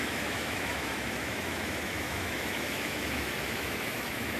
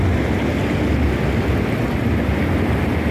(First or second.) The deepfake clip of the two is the first